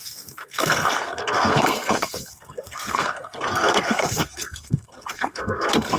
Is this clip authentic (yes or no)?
no